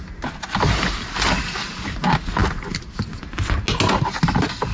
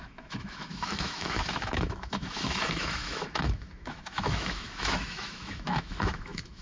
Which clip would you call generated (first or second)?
second